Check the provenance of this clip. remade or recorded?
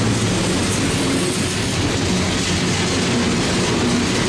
recorded